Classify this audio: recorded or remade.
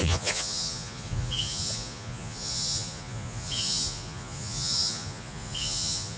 remade